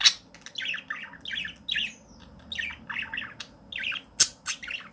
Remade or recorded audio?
recorded